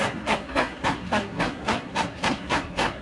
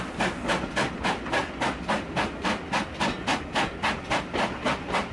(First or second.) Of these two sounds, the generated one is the first